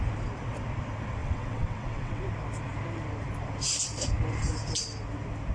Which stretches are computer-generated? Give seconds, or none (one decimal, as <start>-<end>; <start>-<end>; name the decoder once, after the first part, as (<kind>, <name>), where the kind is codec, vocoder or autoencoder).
1.2-2.2 (vocoder, WaveNeXt)